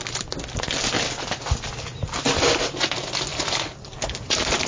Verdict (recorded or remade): recorded